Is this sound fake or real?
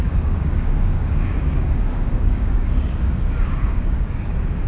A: fake